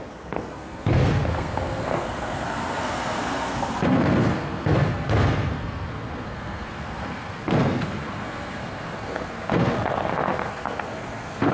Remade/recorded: remade